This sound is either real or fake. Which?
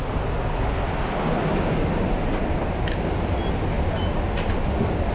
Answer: real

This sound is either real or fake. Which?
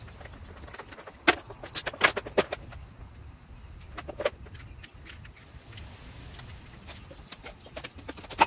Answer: real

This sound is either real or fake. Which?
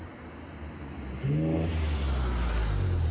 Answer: real